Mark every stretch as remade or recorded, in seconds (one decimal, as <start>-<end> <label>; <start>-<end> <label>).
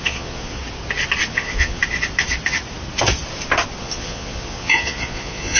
0.0-0.6 remade; 0.6-1.3 recorded; 1.3-1.8 remade; 1.8-3.8 recorded; 3.8-5.6 remade